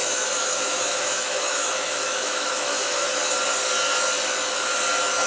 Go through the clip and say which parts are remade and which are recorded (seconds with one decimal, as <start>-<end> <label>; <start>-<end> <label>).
0.0-3.1 remade; 3.1-5.3 recorded